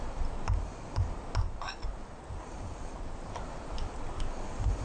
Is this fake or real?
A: real